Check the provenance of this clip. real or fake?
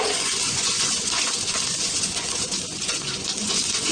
fake